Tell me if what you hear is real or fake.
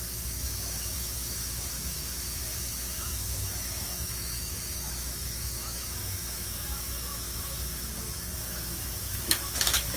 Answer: fake